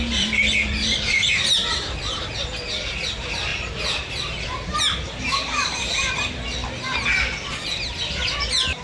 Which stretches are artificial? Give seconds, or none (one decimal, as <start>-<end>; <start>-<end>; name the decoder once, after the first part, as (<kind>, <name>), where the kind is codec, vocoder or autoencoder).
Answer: none